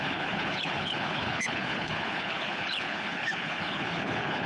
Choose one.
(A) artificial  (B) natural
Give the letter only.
A